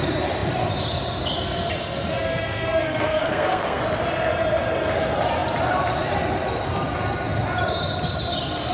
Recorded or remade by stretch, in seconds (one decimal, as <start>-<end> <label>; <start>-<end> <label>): 0.0-2.2 recorded; 2.2-3.8 remade; 3.8-8.7 recorded